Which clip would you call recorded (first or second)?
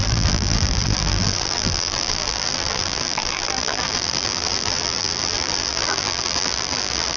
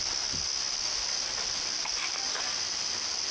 second